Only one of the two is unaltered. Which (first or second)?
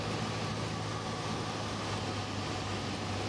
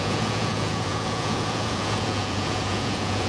first